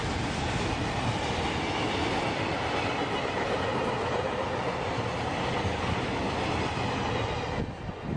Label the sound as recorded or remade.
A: recorded